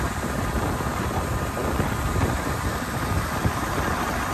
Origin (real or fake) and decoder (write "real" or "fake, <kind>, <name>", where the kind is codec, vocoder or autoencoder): real